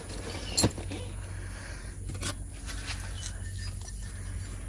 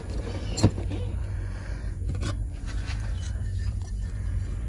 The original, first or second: first